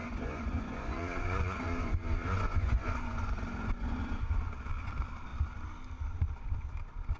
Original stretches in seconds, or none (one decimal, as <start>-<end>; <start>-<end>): 4.3-7.2

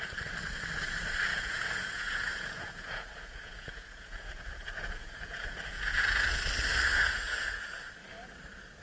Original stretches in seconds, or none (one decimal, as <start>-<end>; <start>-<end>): 0.0-1.3; 6.4-6.9; 7.8-8.8

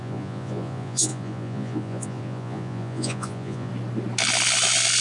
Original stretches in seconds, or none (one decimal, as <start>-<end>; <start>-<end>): 3.7-5.0

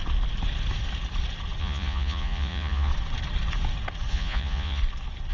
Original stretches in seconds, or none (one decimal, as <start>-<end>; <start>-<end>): 0.0-1.6; 2.9-4.1; 4.8-5.3

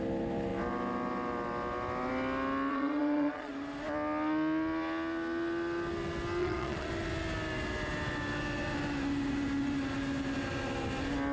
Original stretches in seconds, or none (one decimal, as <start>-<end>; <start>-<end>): 0.0-2.7; 3.5-6.4; 6.9-11.3